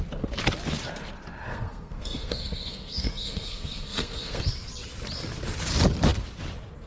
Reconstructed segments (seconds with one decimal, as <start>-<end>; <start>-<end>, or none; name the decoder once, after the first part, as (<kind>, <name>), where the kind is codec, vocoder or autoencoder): 1.5-4.4 (codec, SNAC)